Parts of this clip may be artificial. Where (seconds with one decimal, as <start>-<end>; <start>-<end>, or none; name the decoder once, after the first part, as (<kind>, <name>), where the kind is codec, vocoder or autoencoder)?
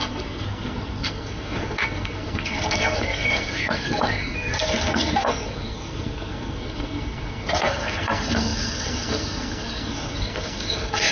0.0-11.1 (codec, SNAC)